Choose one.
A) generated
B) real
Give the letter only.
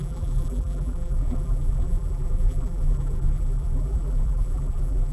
A